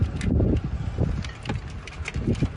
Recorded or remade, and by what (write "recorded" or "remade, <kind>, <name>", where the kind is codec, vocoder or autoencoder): recorded